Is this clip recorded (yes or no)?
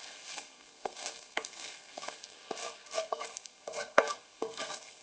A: no